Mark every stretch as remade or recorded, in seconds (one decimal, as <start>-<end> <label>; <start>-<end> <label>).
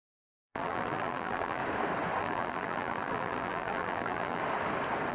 0.0-1.6 remade; 1.6-2.2 recorded; 2.2-4.4 remade; 4.4-5.1 recorded